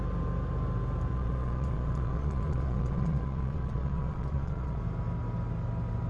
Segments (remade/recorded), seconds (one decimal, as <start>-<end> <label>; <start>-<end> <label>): 0.0-1.1 recorded; 1.1-4.8 remade; 4.8-6.1 recorded